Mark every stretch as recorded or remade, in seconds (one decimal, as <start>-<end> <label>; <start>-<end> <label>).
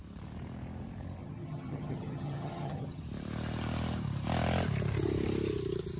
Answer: 0.0-1.2 recorded; 1.2-3.0 remade; 3.0-6.0 recorded